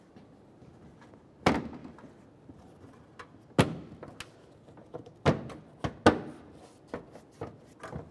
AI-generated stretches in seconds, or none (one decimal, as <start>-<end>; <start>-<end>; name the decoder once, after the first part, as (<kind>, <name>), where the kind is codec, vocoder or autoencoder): none